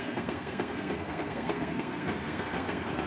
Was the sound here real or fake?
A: fake